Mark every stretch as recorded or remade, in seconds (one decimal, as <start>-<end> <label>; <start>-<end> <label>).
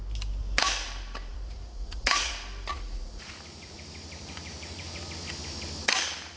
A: 0.0-1.3 recorded; 1.3-2.3 remade; 2.3-2.7 recorded; 2.7-3.8 remade; 3.8-4.2 recorded; 4.2-5.0 remade; 5.0-6.4 recorded